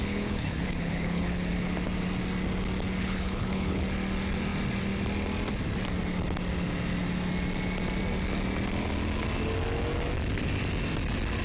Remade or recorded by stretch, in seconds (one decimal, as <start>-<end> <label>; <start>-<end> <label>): 0.0-1.5 remade; 1.5-3.0 recorded; 3.0-3.8 remade; 3.8-11.4 recorded